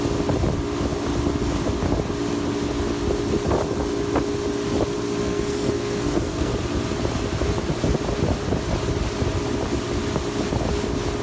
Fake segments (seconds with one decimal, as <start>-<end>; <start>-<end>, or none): 5.2-6.5